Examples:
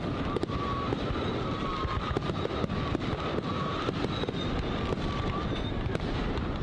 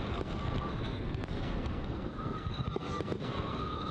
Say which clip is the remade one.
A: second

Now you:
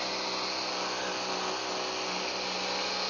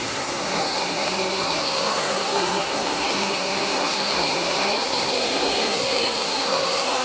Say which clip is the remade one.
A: second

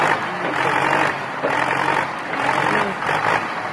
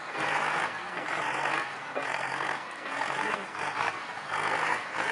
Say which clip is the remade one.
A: second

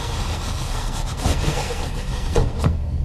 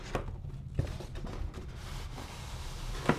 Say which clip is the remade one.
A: first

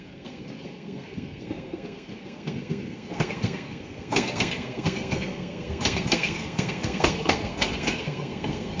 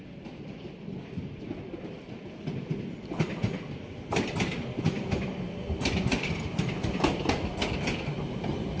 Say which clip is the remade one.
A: first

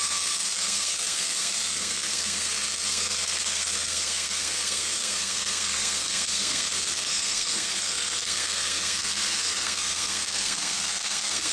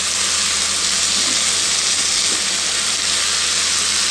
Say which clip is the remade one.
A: first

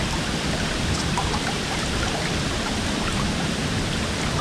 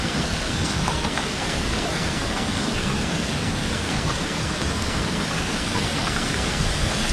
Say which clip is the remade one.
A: second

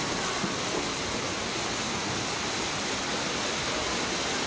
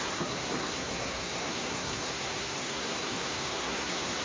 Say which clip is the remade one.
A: second